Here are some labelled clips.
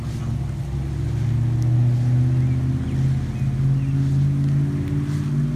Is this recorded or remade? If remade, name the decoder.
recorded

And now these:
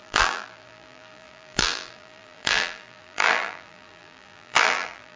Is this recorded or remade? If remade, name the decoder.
remade, vocoder, BigVGAN v2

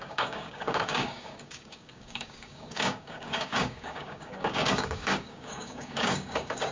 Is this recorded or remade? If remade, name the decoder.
remade, codec, DAC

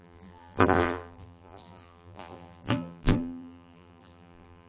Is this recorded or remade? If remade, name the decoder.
remade, vocoder, BigVGAN v2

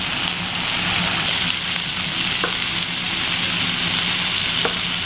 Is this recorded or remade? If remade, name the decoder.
recorded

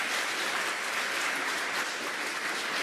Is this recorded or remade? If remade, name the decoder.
recorded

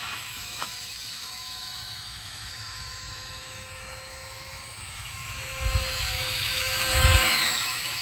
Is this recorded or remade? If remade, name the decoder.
remade, autoencoder, DAC-VAE